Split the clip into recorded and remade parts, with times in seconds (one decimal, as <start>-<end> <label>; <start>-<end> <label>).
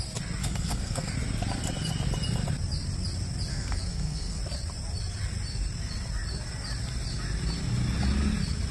0.0-0.4 recorded; 0.4-1.1 remade; 1.1-3.5 recorded; 3.5-4.4 remade; 4.4-8.7 recorded